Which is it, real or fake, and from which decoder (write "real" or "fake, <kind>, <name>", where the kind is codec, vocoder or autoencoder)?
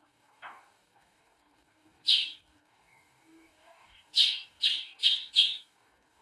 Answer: fake, codec, DAC